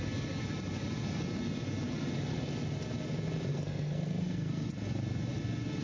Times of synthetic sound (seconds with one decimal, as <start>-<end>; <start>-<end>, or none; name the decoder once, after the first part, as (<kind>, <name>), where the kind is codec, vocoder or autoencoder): 3.5-4.7 (codec, SNAC)